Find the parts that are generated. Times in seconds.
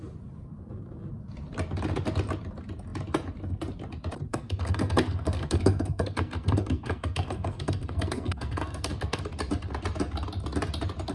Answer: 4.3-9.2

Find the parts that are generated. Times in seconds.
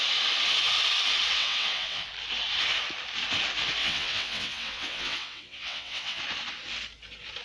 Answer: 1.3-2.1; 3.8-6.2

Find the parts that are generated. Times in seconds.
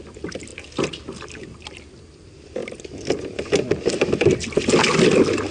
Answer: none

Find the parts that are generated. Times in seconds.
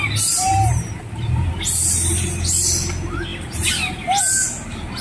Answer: 0.5-1.5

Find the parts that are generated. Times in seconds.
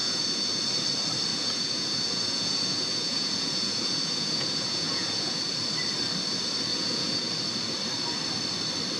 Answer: 0.0-0.6; 1.3-5.4; 6.7-7.3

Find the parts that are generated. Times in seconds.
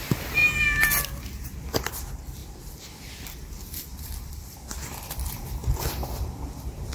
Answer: 0.0-6.9